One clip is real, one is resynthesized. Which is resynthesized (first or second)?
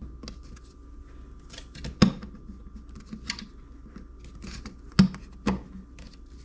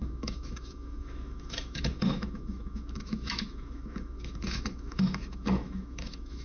second